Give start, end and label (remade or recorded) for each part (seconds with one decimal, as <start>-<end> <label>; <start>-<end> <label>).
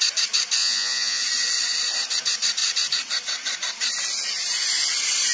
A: 0.0-0.6 recorded; 0.6-1.2 remade; 1.2-5.3 recorded